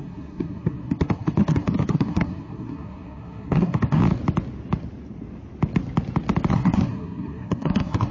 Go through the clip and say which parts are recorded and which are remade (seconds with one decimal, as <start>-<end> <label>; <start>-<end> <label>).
0.0-4.0 remade; 4.0-6.5 recorded; 6.5-8.1 remade